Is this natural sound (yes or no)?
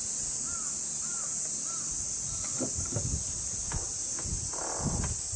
yes